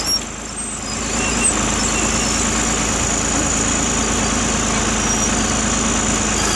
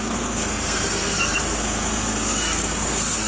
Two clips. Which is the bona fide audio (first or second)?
first